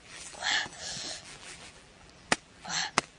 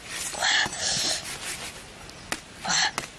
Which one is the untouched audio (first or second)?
second